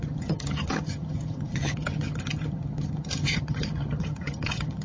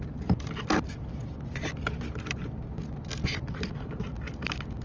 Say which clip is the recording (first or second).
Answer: second